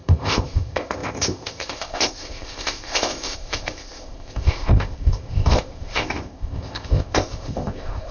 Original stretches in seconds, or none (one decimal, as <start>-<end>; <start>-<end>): none